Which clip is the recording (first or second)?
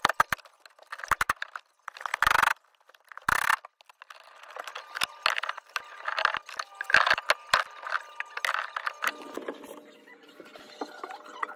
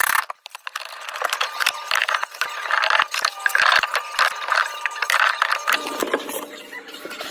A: first